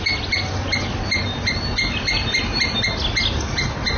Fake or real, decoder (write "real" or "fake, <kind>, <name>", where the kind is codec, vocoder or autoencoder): real